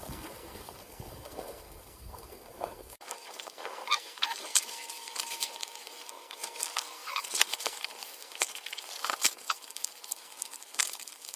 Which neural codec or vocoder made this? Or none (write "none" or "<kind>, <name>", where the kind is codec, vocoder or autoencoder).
codec, SNAC